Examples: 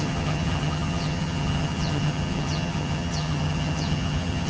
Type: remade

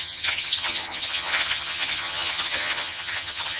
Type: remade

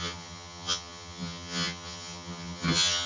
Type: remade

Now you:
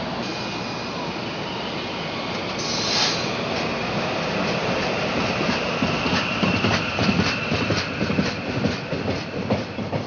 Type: recorded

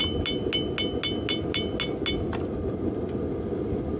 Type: recorded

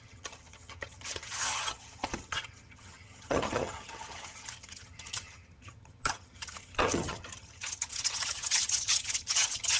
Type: remade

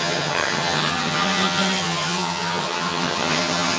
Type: remade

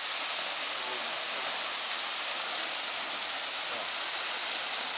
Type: recorded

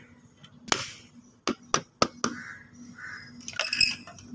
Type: recorded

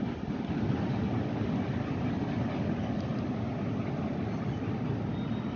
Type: recorded